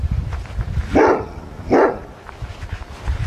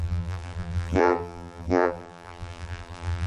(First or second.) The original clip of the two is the first